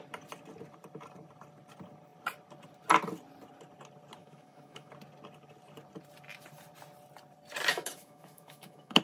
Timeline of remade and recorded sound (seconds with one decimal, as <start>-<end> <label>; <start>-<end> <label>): 0.0-4.2 recorded; 4.2-4.9 remade; 4.9-7.7 recorded; 7.7-9.0 remade